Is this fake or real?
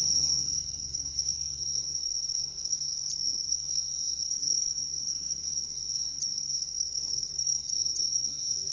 fake